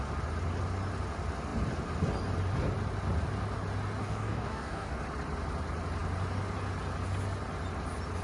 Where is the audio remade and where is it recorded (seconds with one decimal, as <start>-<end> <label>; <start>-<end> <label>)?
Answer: 0.0-4.0 recorded; 4.0-5.0 remade; 5.0-8.2 recorded